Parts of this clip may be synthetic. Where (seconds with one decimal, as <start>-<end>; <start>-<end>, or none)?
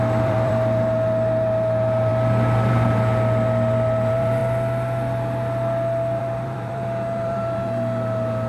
0.0-2.1; 2.7-4.4; 6.2-8.5